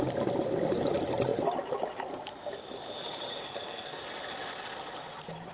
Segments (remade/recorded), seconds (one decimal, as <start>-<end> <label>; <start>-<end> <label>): 0.0-3.4 recorded; 3.4-4.0 remade; 4.0-5.5 recorded